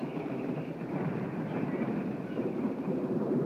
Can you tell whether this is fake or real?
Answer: fake